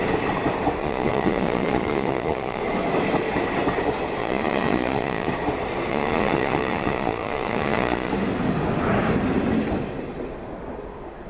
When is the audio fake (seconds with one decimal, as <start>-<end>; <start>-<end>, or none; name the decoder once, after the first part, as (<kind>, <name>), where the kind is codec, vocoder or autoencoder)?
0.8-2.6 (vocoder, Vocos); 4.2-5.3; 5.9-8.1